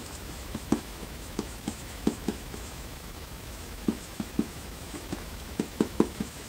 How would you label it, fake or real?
fake